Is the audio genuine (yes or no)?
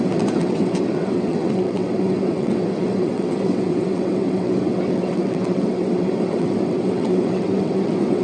no